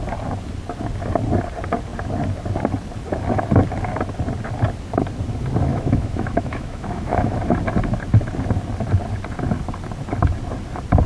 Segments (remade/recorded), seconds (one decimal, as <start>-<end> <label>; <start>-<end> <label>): 0.0-5.7 recorded; 5.7-7.3 remade; 7.3-11.1 recorded